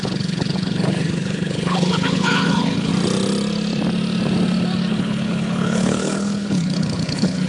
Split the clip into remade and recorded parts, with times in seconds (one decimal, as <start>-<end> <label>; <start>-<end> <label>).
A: 0.0-2.9 remade; 2.9-4.9 recorded; 4.9-7.5 remade